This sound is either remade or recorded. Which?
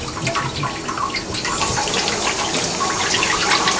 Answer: recorded